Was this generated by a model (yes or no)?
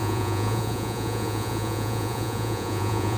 yes